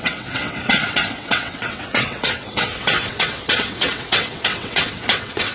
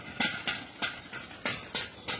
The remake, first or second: first